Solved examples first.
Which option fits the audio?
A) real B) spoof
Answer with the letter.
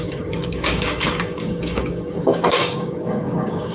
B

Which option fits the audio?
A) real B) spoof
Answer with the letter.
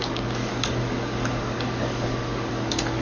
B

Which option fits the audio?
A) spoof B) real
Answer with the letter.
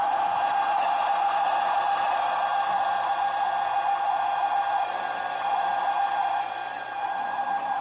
B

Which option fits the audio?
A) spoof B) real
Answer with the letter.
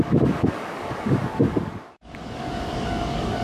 A